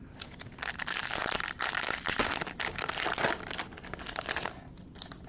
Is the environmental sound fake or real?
real